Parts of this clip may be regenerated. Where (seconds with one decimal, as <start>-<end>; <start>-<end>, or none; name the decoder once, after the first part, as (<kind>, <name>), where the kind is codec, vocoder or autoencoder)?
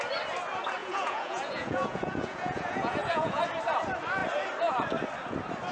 0.8-3.4 (vocoder, Vocos)